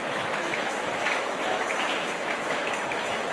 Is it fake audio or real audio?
fake